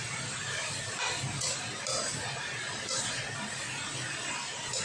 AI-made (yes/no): no